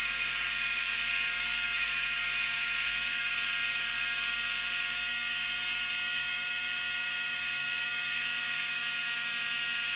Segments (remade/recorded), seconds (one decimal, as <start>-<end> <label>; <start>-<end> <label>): 0.0-10.0 remade